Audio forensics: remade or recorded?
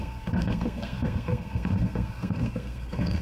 remade